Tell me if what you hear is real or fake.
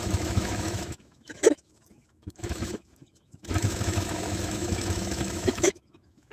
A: fake